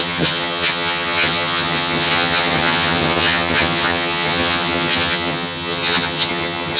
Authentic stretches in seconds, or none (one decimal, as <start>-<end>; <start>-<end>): none

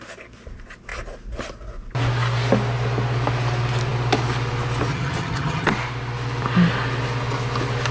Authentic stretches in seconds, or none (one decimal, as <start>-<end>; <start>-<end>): 0.0-4.9; 5.7-7.9

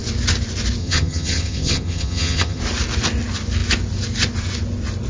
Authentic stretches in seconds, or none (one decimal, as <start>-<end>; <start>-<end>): 0.0-0.8; 2.6-5.1

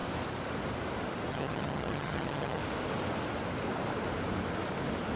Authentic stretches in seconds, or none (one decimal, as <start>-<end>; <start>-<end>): 0.0-1.3; 2.6-5.2

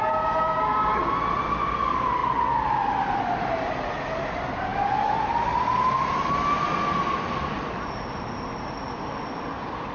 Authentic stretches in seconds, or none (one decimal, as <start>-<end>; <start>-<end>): 0.0-9.9

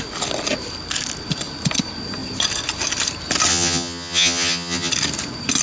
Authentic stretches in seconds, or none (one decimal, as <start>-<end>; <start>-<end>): 0.0-3.5; 4.9-5.6